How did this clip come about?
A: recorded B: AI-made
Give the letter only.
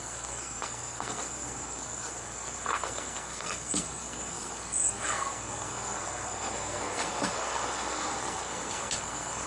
B